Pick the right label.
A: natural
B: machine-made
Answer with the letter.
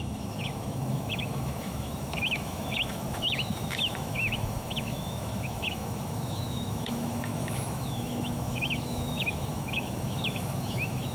B